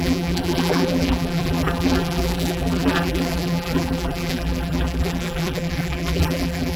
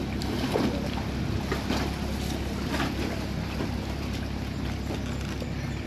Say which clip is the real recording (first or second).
second